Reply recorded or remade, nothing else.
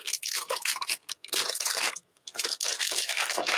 remade